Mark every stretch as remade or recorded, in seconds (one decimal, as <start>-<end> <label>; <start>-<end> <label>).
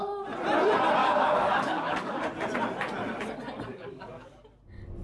0.0-1.0 recorded; 1.0-2.2 remade; 2.2-3.7 recorded; 3.7-4.3 remade; 4.3-5.0 recorded